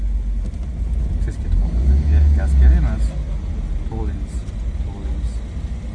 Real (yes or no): yes